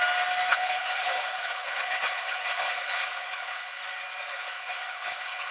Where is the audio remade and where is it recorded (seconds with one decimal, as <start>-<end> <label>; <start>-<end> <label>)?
0.0-0.5 recorded; 0.5-3.8 remade; 3.8-4.3 recorded; 4.3-5.5 remade